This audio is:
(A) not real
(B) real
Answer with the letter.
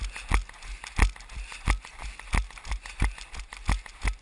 B